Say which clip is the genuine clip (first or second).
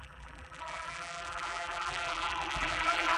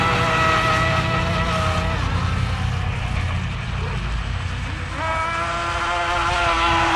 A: second